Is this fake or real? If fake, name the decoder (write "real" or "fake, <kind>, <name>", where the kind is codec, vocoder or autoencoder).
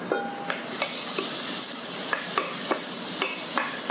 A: real